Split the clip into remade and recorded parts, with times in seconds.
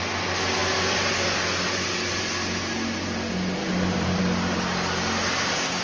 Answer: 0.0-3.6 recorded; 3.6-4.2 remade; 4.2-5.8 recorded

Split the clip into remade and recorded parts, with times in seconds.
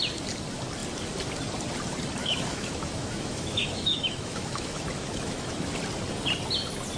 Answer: 0.0-2.2 recorded; 2.2-5.7 remade; 5.7-7.0 recorded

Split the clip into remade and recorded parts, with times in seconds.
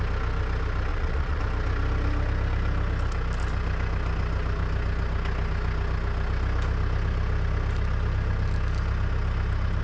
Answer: 0.0-0.9 recorded; 0.9-1.4 remade; 1.4-9.8 recorded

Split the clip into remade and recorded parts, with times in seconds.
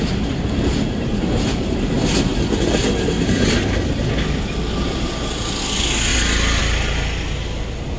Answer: 0.0-8.0 recorded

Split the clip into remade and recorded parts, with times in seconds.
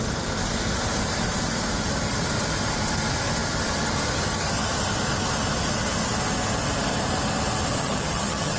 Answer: 0.0-7.8 recorded; 7.8-8.6 remade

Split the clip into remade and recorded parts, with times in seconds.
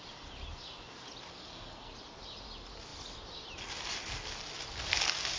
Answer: 0.0-1.3 recorded; 1.3-1.9 remade; 1.9-5.4 recorded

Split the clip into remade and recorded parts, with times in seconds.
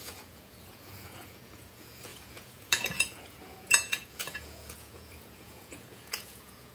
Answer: 0.0-6.7 remade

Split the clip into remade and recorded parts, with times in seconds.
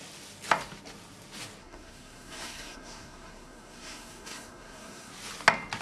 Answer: 0.0-1.6 recorded; 1.6-5.1 remade; 5.1-5.8 recorded